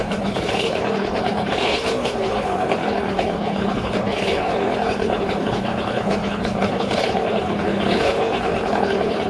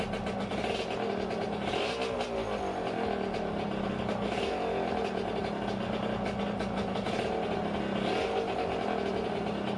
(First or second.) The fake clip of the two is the first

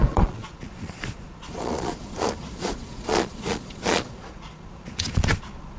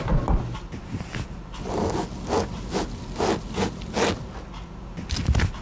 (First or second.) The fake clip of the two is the first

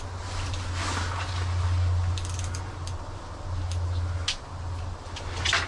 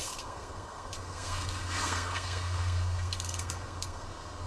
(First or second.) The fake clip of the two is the second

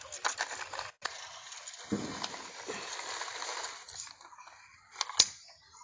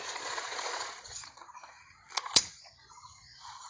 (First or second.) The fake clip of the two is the second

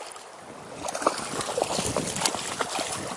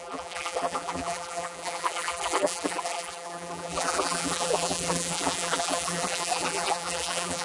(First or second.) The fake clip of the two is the second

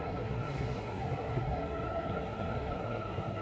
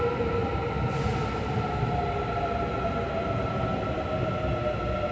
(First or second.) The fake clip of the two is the first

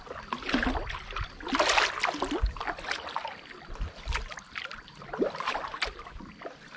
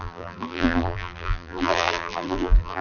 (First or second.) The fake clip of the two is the second